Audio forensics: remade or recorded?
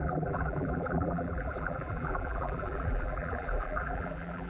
remade